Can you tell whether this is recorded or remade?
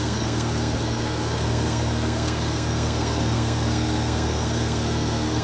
remade